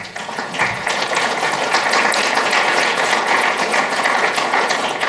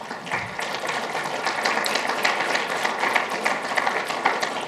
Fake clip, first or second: first